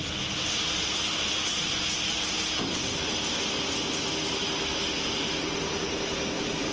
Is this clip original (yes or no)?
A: yes